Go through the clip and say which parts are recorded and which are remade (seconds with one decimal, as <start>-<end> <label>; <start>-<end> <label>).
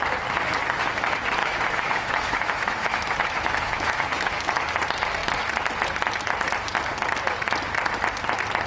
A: 0.0-1.4 recorded; 1.4-4.3 remade; 4.3-8.7 recorded